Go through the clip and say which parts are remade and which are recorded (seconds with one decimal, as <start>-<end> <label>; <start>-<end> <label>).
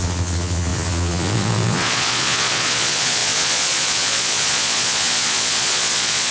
0.0-6.3 remade